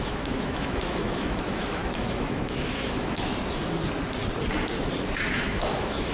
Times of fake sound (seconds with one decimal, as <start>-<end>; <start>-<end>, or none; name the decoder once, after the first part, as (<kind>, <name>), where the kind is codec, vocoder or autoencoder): 0.0-3.3 (autoencoder, DAC-VAE); 5.3-6.1